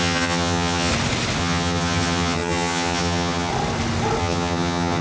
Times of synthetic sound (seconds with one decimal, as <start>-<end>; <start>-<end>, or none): 0.0-0.9; 1.4-3.5; 4.2-5.0